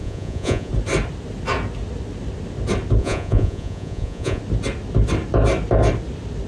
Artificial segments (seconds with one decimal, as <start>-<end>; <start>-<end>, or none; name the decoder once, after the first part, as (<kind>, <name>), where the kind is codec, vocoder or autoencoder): 0.0-0.7 (vocoder, Vocos); 3.0-4.4